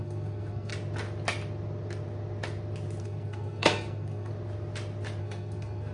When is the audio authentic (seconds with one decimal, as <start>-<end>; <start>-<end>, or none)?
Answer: 0.7-3.0; 4.3-5.2

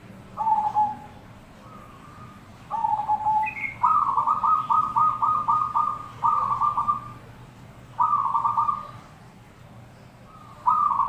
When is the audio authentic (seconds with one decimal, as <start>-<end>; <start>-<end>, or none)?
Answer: 0.0-4.4; 5.8-11.1

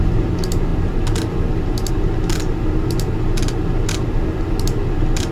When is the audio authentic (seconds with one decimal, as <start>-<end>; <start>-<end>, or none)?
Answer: 0.0-5.3

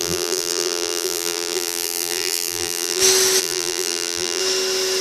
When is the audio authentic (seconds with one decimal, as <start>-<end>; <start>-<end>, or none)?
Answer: 3.0-3.4; 4.4-5.0

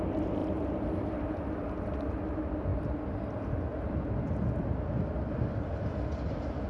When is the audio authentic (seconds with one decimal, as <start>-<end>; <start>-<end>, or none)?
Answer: 0.0-0.4; 2.1-6.7

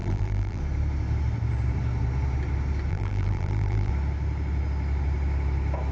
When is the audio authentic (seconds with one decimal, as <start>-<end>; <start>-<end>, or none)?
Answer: 0.6-2.9; 3.9-5.9

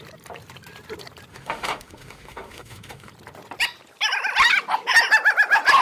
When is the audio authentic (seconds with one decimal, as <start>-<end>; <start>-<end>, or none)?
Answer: 0.0-1.3; 3.1-5.8